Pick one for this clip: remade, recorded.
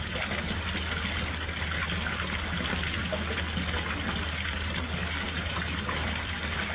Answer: recorded